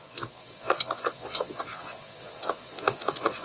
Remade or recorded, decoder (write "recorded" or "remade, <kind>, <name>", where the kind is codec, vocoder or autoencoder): remade, vocoder, Vocos